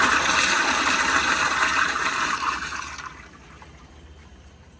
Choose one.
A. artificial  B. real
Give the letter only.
A